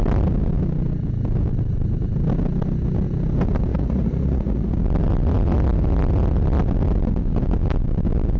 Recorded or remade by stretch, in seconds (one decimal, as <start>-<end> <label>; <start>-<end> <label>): 0.0-3.7 recorded; 3.7-4.7 remade; 4.7-8.4 recorded